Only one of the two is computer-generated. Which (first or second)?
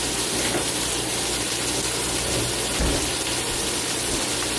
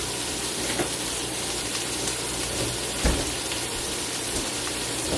second